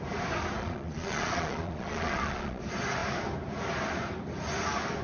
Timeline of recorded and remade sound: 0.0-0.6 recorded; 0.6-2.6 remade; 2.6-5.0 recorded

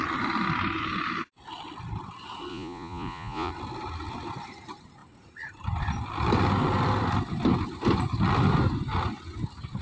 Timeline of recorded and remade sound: 0.0-2.5 recorded; 2.5-3.5 remade; 3.5-9.8 recorded

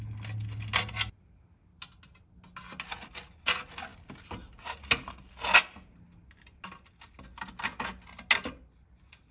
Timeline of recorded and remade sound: 0.0-9.3 recorded

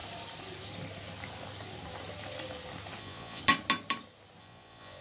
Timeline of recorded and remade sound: 0.0-3.0 recorded; 3.0-3.4 remade; 3.4-4.4 recorded; 4.4-5.0 remade

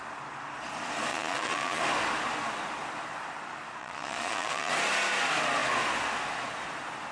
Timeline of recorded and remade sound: 0.0-1.1 recorded; 1.1-1.8 remade; 1.8-3.8 recorded; 3.8-4.7 remade; 4.7-7.1 recorded